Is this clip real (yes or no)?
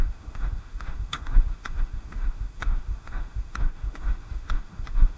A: no